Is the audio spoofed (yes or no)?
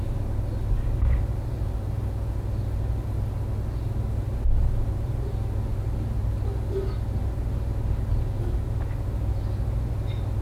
no